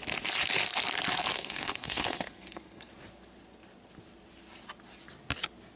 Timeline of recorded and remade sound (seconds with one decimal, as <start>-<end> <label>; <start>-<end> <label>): 0.0-1.3 recorded; 1.3-2.9 remade; 2.9-5.8 recorded